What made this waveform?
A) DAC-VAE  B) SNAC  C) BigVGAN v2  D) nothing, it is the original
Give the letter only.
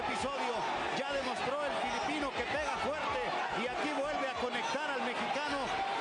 D